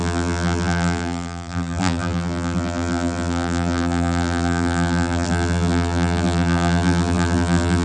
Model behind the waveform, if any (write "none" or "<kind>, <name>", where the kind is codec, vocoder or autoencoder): vocoder, BigVGAN v2